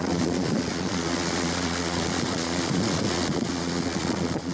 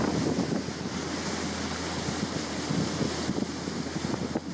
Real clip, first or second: second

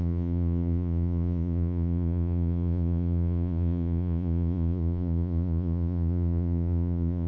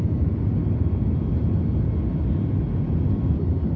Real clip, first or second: second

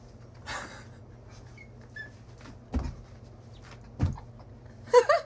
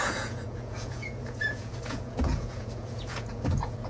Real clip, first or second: first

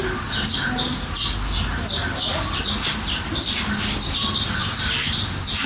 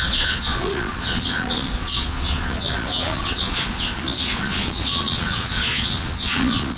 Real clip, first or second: first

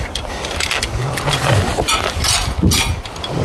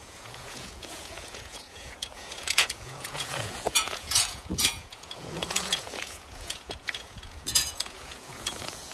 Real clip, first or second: first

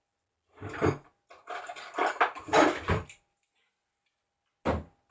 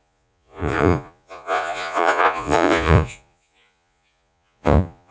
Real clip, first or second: first